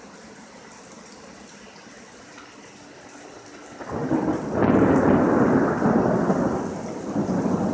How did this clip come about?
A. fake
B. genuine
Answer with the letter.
B